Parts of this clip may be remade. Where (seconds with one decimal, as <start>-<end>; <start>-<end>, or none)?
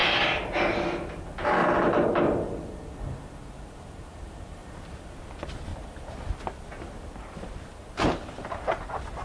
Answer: 3.1-4.6; 5.2-5.7; 7.0-9.2